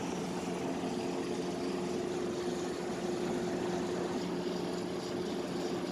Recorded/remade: recorded